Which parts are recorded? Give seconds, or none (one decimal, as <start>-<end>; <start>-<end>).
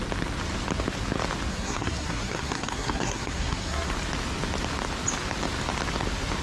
0.0-1.5; 3.9-6.4